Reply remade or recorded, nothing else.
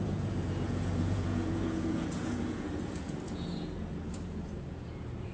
remade